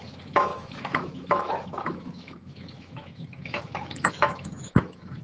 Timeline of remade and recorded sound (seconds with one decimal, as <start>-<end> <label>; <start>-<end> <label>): 0.0-5.2 remade